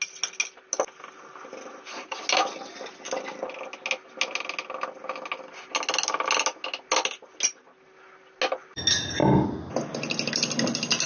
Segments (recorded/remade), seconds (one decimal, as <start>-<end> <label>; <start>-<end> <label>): 0.0-11.1 recorded